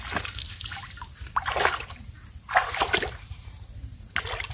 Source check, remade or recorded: recorded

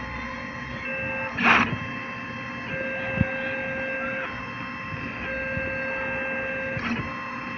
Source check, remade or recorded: recorded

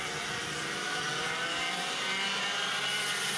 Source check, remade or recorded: recorded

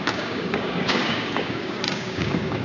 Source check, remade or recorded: remade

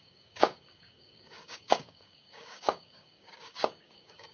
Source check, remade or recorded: remade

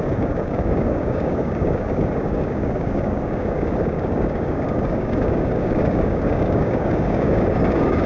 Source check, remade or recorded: remade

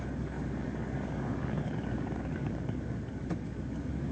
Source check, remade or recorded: remade